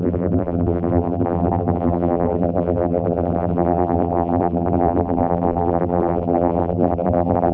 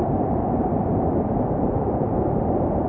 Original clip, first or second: second